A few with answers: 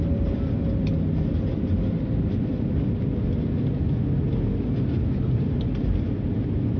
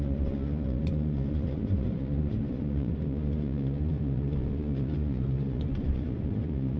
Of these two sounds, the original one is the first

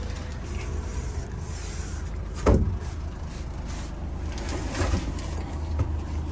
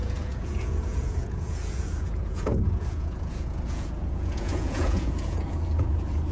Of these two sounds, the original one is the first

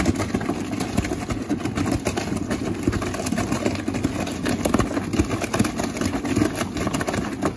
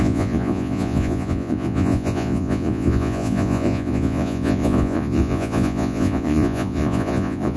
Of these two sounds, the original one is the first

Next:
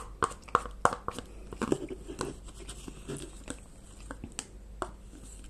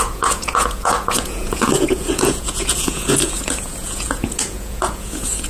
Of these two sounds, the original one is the first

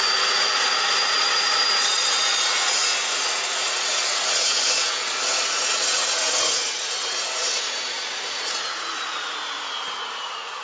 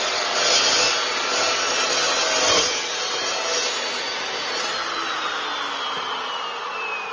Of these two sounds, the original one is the second